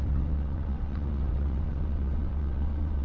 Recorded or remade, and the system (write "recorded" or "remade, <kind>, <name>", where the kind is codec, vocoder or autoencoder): remade, vocoder, WaveNeXt